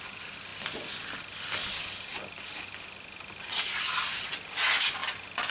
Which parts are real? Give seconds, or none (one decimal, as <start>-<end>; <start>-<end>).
0.0-5.5

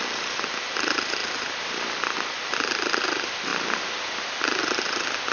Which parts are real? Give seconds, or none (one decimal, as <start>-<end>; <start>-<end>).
0.0-5.3

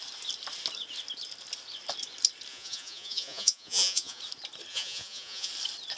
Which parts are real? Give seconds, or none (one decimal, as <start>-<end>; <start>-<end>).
0.0-2.5; 4.2-4.7; 5.5-6.0

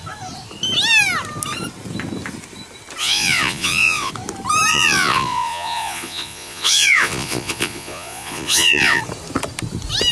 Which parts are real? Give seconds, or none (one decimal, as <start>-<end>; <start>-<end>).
0.0-3.0; 4.1-4.7; 9.0-10.1

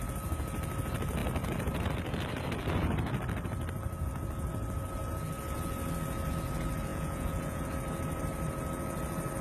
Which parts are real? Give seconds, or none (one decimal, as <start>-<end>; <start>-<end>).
0.0-6.9; 7.6-9.4

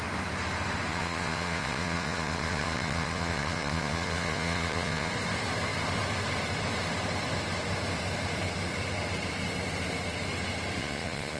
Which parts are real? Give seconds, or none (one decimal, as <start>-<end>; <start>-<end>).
0.0-0.9; 5.1-10.8